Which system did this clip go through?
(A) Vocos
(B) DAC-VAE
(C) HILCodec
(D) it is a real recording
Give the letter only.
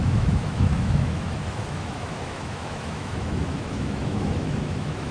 B